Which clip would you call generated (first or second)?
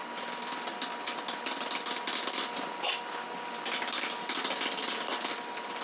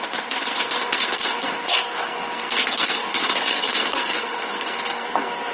second